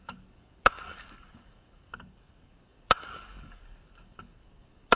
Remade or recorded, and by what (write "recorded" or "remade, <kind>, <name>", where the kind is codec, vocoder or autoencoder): remade, codec, DAC